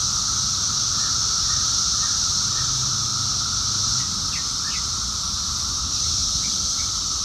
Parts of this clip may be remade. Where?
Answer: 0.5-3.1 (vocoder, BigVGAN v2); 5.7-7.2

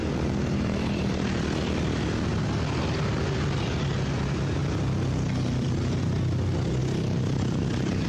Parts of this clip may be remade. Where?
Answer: 0.0-1.6 (vocoder, BigVGAN v2); 6.8-8.1

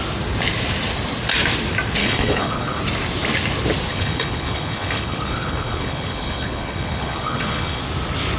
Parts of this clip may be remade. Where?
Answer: 2.0-2.8 (codec, HILCodec); 3.9-7.8

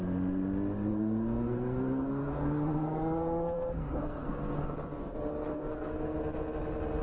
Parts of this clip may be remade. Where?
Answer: 0.9-4.7 (codec, SNAC); 5.5-6.2

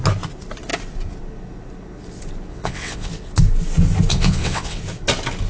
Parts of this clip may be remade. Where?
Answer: 2.5-3.1 (vocoder, WaveNeXt); 4.1-4.8

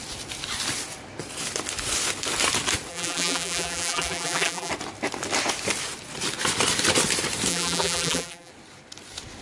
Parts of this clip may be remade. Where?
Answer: 2.9-4.7 (vocoder, BigVGAN v2); 7.5-8.5